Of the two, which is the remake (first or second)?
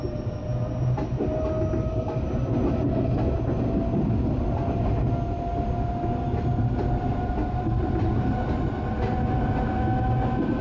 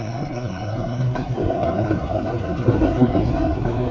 second